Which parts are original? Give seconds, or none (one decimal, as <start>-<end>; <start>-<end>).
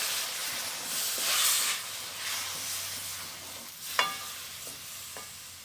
0.0-5.6